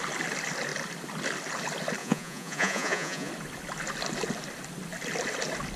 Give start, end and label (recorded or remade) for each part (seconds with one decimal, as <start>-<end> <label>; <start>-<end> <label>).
0.0-2.0 recorded; 2.0-3.3 remade; 3.3-5.8 recorded